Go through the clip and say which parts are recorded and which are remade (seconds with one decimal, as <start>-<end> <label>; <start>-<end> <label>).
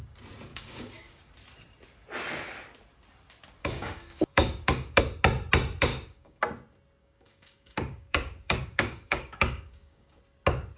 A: 0.0-0.5 recorded; 0.5-1.3 remade; 1.3-3.6 recorded; 3.6-5.0 remade; 5.0-5.9 recorded; 5.9-6.4 remade; 6.4-7.0 recorded; 7.0-10.2 remade; 10.2-10.8 recorded